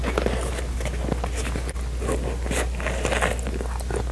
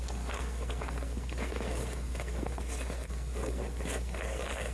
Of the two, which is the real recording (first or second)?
first